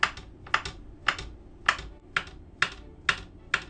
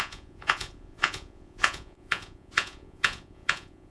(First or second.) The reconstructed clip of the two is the second